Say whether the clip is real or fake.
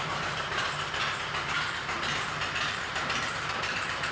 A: fake